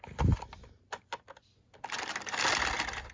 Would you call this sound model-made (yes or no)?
no